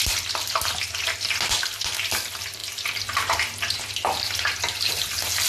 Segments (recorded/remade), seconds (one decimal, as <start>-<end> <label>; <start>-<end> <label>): 0.0-5.5 recorded